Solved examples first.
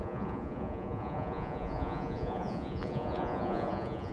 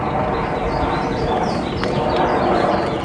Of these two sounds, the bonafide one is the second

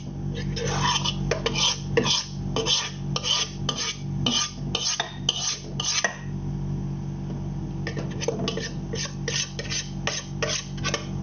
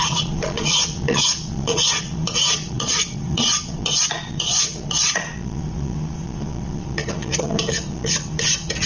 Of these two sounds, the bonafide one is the first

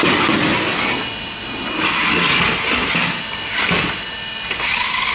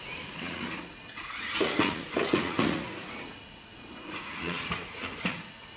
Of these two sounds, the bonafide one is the first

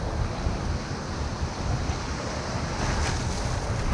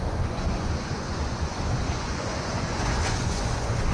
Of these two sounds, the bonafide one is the first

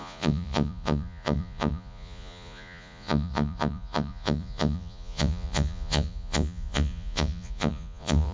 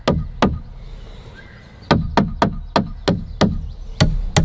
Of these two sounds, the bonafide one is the second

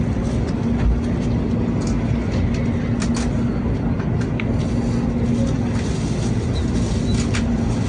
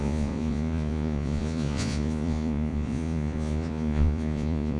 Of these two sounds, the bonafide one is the first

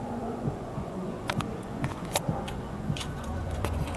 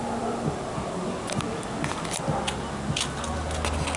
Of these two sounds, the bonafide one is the second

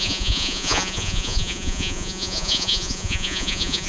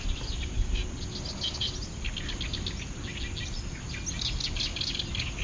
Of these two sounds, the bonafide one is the second